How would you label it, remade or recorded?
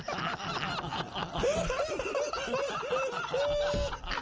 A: recorded